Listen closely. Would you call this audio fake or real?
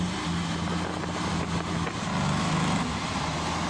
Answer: real